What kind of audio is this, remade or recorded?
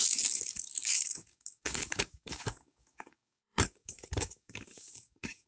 remade